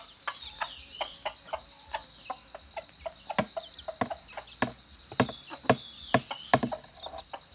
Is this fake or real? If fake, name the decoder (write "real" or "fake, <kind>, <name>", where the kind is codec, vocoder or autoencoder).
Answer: real